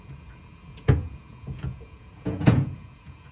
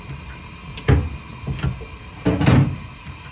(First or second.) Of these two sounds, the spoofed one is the first